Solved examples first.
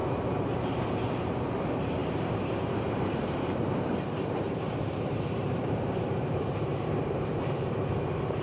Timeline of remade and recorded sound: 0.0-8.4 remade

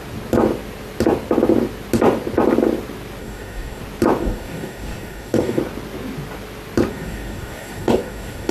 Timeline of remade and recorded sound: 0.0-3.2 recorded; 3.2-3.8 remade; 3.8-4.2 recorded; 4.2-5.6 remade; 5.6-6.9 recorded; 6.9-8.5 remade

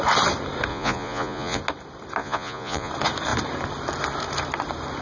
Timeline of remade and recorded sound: 0.0-0.7 recorded; 0.7-1.6 remade; 1.6-2.2 recorded; 2.2-2.9 remade; 2.9-5.0 recorded

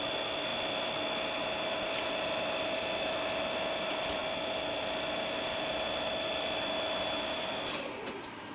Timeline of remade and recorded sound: 0.0-8.5 recorded

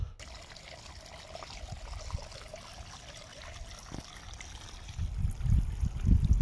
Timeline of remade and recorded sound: 0.0-6.4 recorded

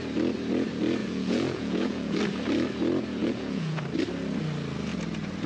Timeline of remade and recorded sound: 0.0-1.0 recorded; 1.0-2.2 remade; 2.2-3.2 recorded; 3.2-3.8 remade; 3.8-5.5 recorded